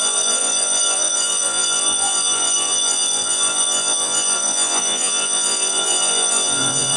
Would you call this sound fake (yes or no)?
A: yes